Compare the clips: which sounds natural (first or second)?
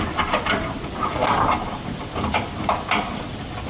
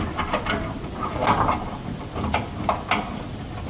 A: second